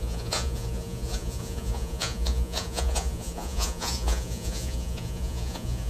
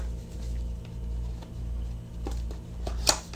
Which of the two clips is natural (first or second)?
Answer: second